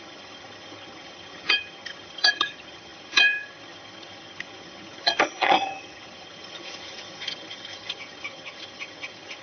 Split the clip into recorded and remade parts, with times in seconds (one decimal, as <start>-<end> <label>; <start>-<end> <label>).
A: 0.0-9.4 remade